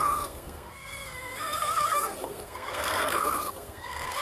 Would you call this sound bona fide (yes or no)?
no